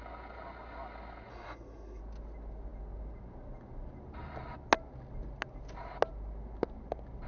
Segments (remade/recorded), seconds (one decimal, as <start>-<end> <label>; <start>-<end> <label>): 0.0-1.3 recorded; 1.3-2.0 remade; 2.0-7.3 recorded